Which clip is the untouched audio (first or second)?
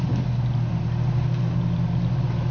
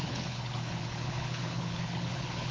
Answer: first